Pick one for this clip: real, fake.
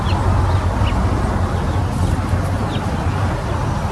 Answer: real